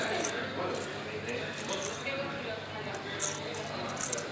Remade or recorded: recorded